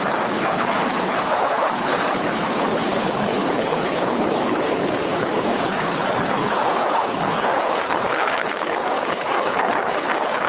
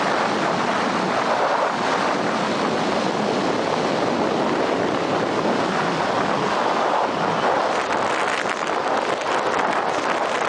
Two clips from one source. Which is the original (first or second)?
second